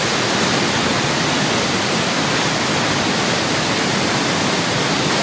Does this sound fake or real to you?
real